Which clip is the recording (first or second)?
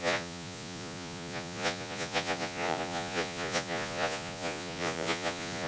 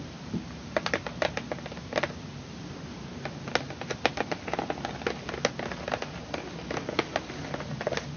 second